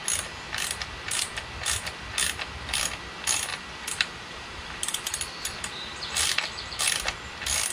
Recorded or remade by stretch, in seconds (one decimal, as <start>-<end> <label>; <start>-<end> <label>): 0.0-3.5 recorded; 3.5-6.8 remade; 6.8-7.7 recorded